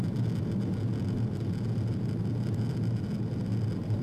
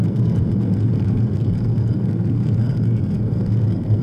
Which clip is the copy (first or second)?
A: second